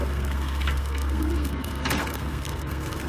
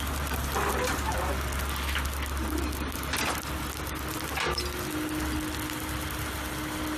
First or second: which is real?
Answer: second